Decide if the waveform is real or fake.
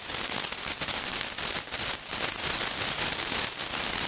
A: real